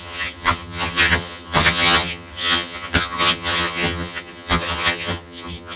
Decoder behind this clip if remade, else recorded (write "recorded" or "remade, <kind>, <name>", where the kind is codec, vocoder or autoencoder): remade, vocoder, HiFi-GAN